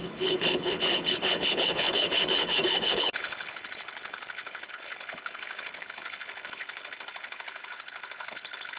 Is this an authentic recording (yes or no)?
no